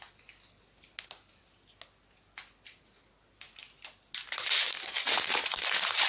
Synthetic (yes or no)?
no